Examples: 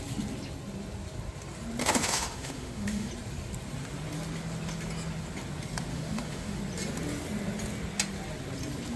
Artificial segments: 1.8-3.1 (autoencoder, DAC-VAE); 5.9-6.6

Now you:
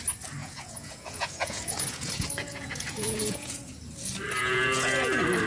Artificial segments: 0.4-3.7 (vocoder, Vocos); 4.4-4.9

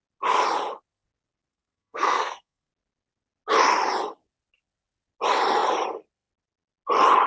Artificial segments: 1.5-2.7 (codec, SNAC)

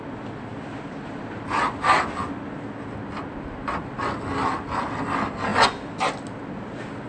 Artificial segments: none

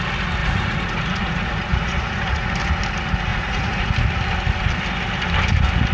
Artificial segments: 0.4-2.5 (vocoder, Vocos); 3.3-3.9

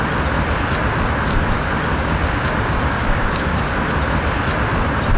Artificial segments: 1.9-4.0 (codec, DAC)

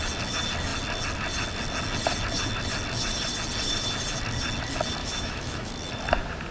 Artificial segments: 5.0-5.7 (autoencoder, DAC-VAE)